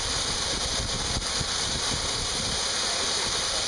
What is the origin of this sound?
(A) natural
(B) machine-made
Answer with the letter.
A